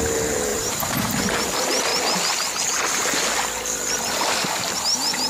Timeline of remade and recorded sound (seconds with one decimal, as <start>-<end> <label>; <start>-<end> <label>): 0.0-0.5 recorded; 0.5-1.2 remade; 1.2-5.3 recorded